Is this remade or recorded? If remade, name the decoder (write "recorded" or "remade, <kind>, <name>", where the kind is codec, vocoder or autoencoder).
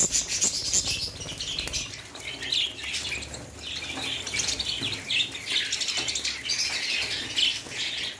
recorded